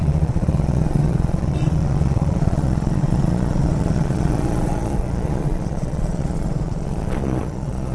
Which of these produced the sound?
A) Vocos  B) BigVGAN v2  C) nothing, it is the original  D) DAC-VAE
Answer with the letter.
A